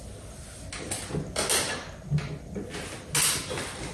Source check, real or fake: real